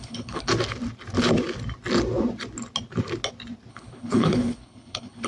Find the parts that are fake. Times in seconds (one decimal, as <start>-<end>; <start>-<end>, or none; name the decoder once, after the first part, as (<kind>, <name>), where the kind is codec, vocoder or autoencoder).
0.0-0.5 (codec, HILCodec); 3.7-5.3